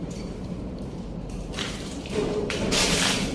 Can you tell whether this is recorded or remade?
remade